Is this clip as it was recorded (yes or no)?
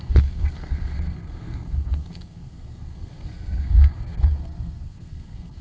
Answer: no